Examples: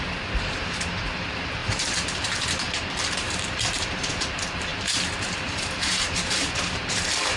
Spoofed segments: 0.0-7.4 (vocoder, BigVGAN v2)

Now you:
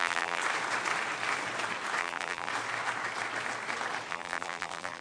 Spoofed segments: 0.0-0.4 (vocoder, BigVGAN v2); 2.0-2.5; 4.1-5.0

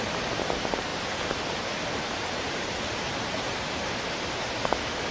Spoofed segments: 0.9-4.0 (vocoder, BigVGAN v2)

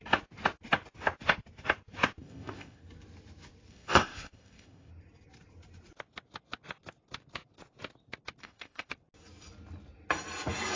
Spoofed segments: 2.2-2.8 (codec, ZipCodec); 3.7-4.9; 8.4-8.9

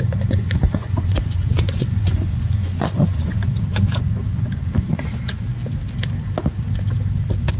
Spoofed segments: 0.0-5.6 (vocoder, Vocos)

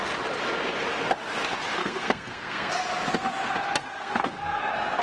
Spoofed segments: 1.8-2.7 (codec, SNAC); 3.8-4.6

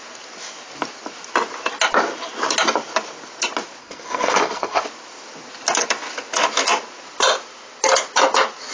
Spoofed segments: 3.8-4.8 (codec, SNAC)

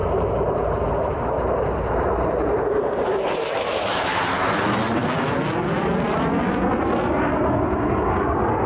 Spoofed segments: 0.0-4.4 (vocoder, BigVGAN v2)